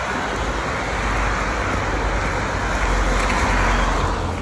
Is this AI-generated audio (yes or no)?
no